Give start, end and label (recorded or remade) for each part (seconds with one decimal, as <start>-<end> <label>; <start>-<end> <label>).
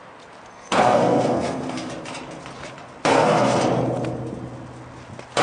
0.0-0.5 recorded; 0.5-1.9 remade; 1.9-3.1 recorded; 3.1-3.6 remade; 3.6-5.4 recorded